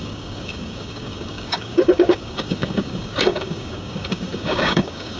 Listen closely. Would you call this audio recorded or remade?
remade